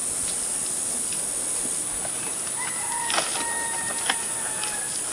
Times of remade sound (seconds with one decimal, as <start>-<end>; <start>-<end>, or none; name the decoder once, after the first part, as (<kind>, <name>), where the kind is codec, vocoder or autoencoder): none